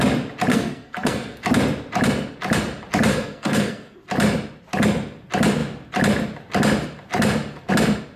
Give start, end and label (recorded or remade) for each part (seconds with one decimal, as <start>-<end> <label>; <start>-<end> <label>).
0.0-0.5 recorded; 0.5-1.4 remade; 1.4-3.1 recorded; 3.1-4.0 remade; 4.0-8.2 recorded